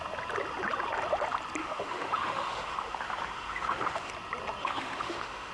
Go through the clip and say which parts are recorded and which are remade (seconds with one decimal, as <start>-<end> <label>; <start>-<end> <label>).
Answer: 0.0-1.6 recorded; 1.6-4.1 remade; 4.1-4.6 recorded; 4.6-5.5 remade